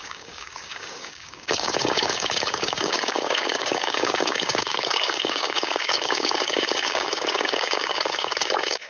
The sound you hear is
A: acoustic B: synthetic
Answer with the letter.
B